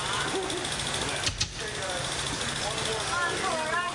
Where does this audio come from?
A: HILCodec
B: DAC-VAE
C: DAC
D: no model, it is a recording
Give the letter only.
D